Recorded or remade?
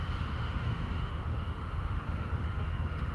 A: remade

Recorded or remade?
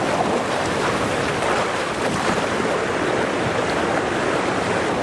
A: recorded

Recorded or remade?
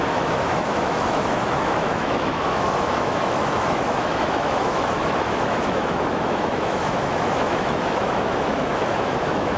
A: remade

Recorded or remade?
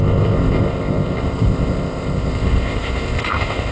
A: remade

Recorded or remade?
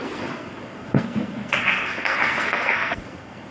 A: remade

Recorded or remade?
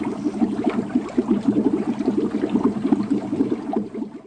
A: recorded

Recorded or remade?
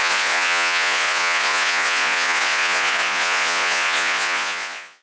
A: remade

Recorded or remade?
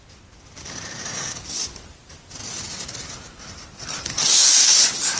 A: recorded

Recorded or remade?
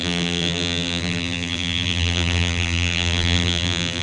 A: remade